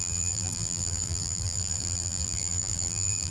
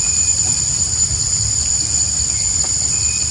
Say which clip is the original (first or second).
second